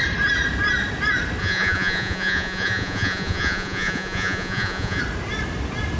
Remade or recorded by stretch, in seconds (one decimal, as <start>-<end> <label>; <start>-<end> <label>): 0.0-1.4 recorded; 1.4-5.0 remade; 5.0-6.0 recorded